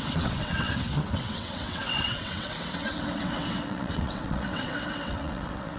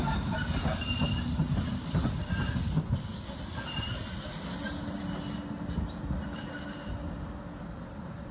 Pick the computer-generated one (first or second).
first